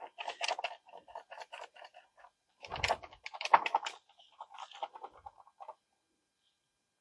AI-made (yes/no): no